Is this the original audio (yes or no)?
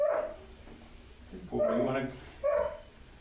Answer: yes